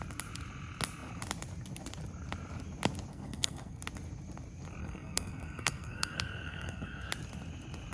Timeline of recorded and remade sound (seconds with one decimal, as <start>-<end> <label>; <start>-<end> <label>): 0.0-3.1 recorded; 3.1-3.8 remade; 3.8-4.8 recorded; 4.8-7.1 remade; 7.1-7.9 recorded